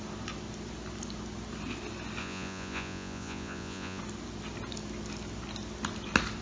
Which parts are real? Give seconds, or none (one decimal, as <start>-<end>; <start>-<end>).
0.0-2.2; 4.0-6.4